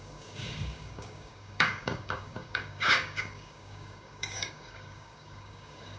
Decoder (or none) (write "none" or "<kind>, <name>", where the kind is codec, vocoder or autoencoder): codec, DAC